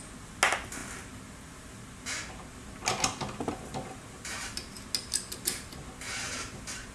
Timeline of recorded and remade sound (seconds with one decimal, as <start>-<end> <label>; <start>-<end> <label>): 0.0-6.9 recorded